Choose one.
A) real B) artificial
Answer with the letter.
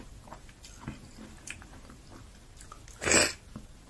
A